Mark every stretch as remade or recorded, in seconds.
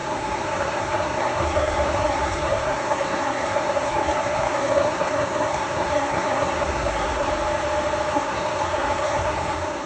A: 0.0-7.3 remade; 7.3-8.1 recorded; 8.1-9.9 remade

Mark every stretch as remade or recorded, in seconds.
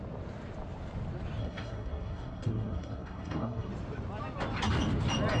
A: 0.0-1.4 recorded; 1.4-3.7 remade; 3.7-5.4 recorded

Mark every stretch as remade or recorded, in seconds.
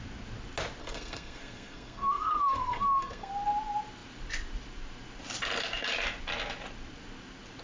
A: 0.0-0.8 recorded; 0.8-3.3 remade; 3.3-7.6 recorded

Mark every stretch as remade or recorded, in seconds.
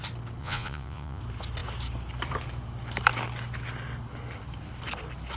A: 0.0-0.4 recorded; 0.4-1.2 remade; 1.2-5.4 recorded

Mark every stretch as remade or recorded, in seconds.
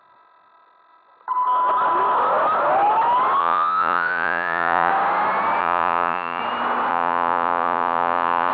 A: 0.0-3.4 recorded; 3.4-4.9 remade; 4.9-5.6 recorded; 5.6-6.4 remade; 6.4-6.9 recorded; 6.9-8.5 remade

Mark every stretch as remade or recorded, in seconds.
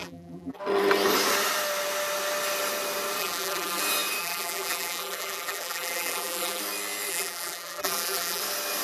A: 0.0-0.6 remade; 0.6-3.2 recorded; 3.2-3.8 remade; 3.8-4.2 recorded; 4.2-6.6 remade; 6.6-7.1 recorded; 7.1-8.4 remade; 8.4-8.8 recorded